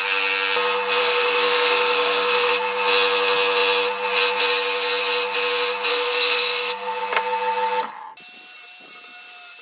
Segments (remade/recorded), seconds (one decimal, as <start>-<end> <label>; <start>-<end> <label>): 0.0-1.0 recorded; 1.0-2.5 remade; 2.5-5.9 recorded; 5.9-7.0 remade; 7.0-9.6 recorded